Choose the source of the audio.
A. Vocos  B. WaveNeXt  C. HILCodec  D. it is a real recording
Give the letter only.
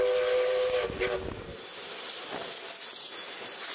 D